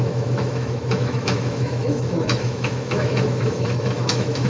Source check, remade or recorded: remade